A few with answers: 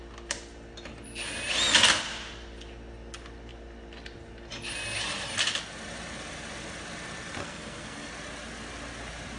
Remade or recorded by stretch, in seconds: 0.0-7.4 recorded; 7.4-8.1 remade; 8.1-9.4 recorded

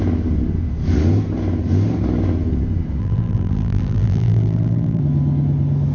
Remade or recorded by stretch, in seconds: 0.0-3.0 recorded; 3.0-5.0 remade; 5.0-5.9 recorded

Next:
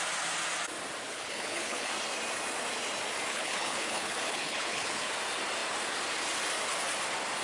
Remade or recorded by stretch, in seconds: 0.0-1.1 recorded; 1.1-1.9 remade; 1.9-3.3 recorded; 3.3-5.1 remade; 5.1-7.4 recorded

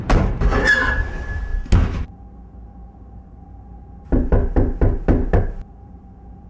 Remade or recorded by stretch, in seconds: 0.0-1.5 remade; 1.5-5.4 recorded; 5.4-6.5 remade

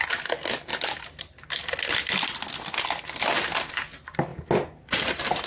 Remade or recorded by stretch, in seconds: 0.0-0.7 remade; 0.7-3.9 recorded; 3.9-4.3 remade; 4.3-4.8 recorded; 4.8-5.5 remade

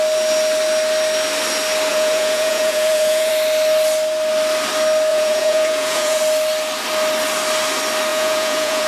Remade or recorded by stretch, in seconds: 0.0-1.9 recorded; 1.9-3.3 remade; 3.3-5.1 recorded; 5.1-6.2 remade; 6.2-8.1 recorded; 8.1-8.9 remade